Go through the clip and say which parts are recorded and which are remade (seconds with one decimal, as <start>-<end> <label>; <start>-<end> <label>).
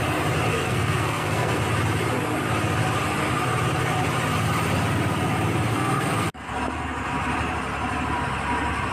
0.0-0.5 recorded; 0.5-1.6 remade; 1.6-5.7 recorded; 5.7-6.5 remade; 6.5-8.9 recorded